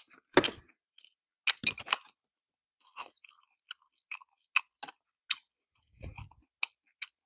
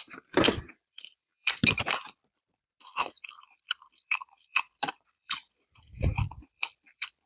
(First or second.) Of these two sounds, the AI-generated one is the second